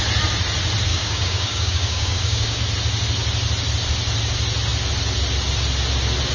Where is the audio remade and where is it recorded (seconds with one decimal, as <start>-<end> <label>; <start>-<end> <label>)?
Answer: 0.0-0.9 recorded; 0.9-2.6 remade; 2.6-6.3 recorded